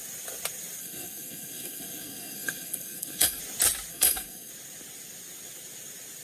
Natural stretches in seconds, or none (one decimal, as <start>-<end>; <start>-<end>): 0.0-0.8; 3.4-3.9; 4.5-6.2